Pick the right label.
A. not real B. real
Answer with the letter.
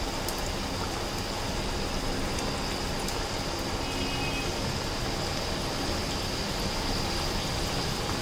B